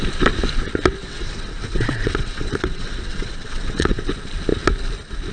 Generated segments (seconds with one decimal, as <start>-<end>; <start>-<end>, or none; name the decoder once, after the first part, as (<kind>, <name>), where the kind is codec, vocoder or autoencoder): 1.0-4.0 (vocoder, WaveNeXt)